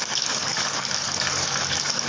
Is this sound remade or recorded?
remade